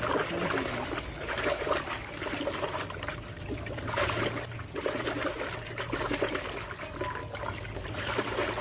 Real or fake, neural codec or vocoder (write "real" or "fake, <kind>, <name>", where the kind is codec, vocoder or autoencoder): real